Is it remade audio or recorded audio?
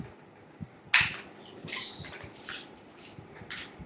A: recorded